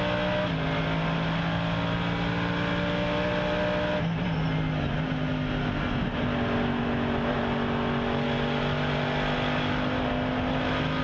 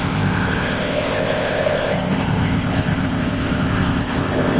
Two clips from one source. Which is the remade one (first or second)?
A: second